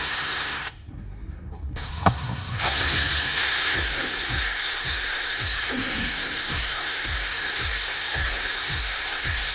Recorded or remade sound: remade